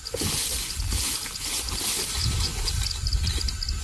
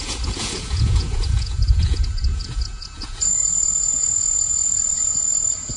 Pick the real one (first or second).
first